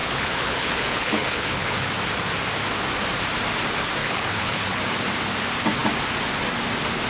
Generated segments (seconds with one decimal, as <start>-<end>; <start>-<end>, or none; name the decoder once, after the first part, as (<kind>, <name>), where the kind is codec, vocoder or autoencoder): 0.0-1.9 (codec, HILCodec); 4.0-4.8